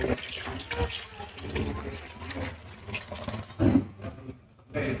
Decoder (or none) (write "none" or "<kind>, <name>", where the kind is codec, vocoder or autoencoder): none